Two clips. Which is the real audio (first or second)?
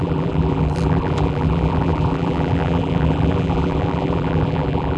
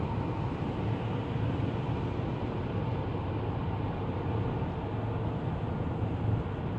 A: second